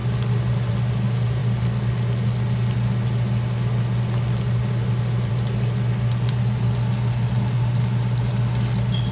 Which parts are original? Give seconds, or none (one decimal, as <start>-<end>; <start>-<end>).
0.0-9.1